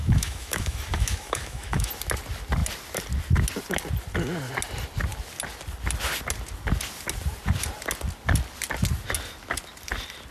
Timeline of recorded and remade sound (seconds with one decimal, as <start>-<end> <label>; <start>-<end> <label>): 0.0-1.9 remade; 1.9-10.3 recorded